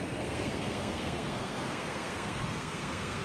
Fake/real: fake